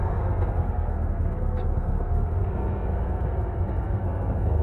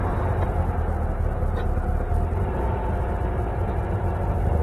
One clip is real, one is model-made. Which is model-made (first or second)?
first